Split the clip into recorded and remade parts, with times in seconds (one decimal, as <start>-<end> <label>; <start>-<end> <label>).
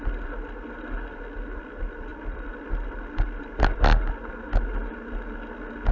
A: 0.0-2.1 recorded; 2.1-3.5 remade; 3.5-5.9 recorded